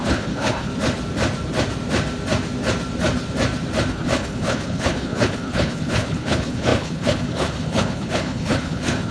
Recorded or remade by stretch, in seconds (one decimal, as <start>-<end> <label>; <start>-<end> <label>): 0.0-0.7 remade; 0.7-3.9 recorded; 3.9-9.1 remade